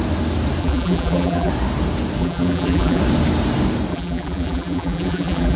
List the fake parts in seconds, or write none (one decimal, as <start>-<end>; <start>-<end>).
0.6-1.5; 2.2-3.0; 3.9-5.6